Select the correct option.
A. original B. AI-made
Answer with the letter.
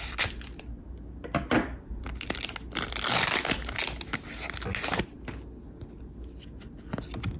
A